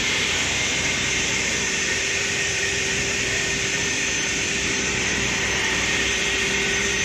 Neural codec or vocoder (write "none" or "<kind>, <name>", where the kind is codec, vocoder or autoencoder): vocoder, BigVGAN v2